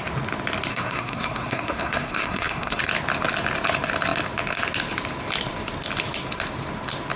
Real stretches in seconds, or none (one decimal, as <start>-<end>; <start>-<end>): 0.0-0.7; 2.8-7.2